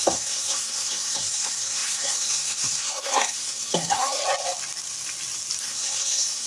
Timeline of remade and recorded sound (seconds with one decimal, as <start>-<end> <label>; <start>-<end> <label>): 0.0-4.2 remade; 4.2-5.6 recorded; 5.6-6.5 remade